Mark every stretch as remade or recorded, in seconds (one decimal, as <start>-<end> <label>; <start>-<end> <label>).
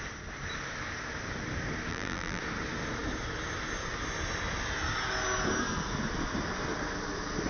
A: 0.0-1.9 recorded; 1.9-2.4 remade; 2.4-7.5 recorded